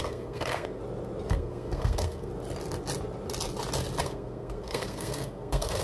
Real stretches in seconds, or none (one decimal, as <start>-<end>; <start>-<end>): 0.8-1.3; 2.3-4.0